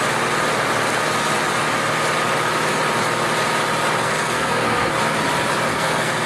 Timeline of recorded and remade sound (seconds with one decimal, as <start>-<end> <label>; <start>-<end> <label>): 0.0-4.0 recorded; 4.0-5.0 remade; 5.0-5.7 recorded; 5.7-6.3 remade